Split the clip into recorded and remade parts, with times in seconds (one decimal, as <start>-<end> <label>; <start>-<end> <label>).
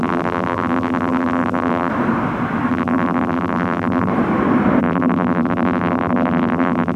0.0-1.9 remade; 1.9-2.7 recorded; 2.7-4.1 remade; 4.1-4.8 recorded; 4.8-7.0 remade